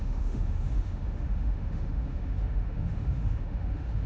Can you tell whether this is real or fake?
fake